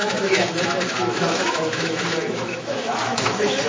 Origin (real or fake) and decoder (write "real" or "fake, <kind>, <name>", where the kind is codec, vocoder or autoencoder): fake, autoencoder, DAC-VAE